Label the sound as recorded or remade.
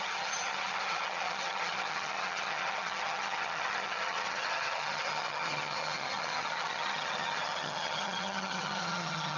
remade